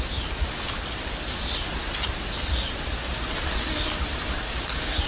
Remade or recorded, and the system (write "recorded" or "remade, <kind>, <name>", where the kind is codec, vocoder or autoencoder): recorded